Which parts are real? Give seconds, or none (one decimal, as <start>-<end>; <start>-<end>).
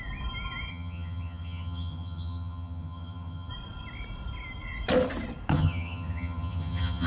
0.0-0.7; 3.5-5.5